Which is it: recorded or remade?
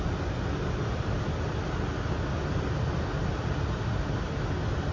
recorded